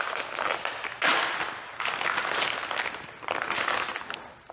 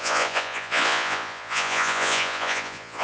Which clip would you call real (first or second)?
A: first